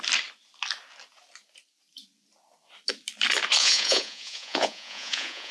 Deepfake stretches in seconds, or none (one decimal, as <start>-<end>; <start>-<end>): 3.6-5.5